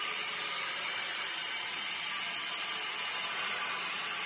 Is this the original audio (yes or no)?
yes